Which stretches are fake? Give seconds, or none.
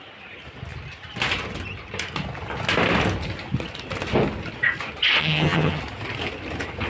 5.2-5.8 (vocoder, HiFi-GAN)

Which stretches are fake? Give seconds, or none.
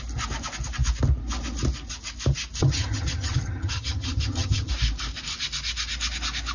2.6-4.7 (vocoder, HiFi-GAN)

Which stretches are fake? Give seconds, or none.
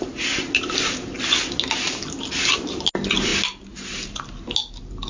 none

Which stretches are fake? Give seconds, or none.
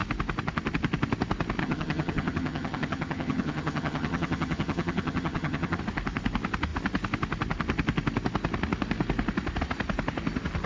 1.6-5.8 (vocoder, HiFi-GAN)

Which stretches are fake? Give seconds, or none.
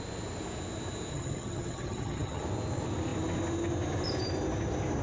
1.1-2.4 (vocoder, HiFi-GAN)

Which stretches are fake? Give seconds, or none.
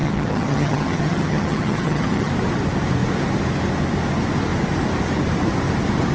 0.0-2.3 (vocoder, HiFi-GAN)